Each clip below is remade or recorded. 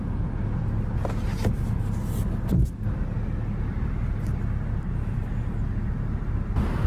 recorded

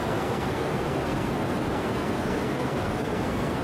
remade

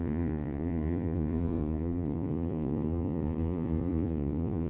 remade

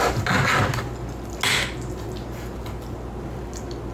recorded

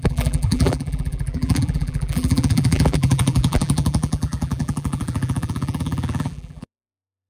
remade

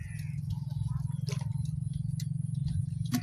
recorded